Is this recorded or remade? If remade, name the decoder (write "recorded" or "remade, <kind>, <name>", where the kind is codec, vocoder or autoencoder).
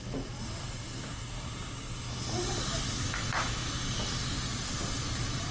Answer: recorded